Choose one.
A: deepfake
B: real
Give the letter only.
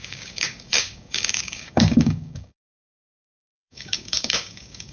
A